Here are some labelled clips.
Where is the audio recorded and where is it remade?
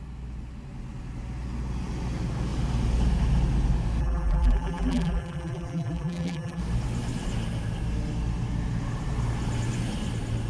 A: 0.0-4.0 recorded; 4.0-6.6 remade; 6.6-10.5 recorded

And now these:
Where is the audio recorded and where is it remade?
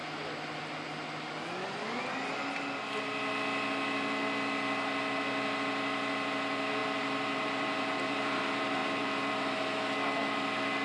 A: 0.0-6.8 recorded; 6.8-8.4 remade; 8.4-10.8 recorded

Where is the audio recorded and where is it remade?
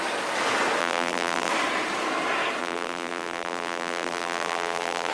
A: 0.0-0.8 recorded; 0.8-1.5 remade; 1.5-2.6 recorded; 2.6-5.1 remade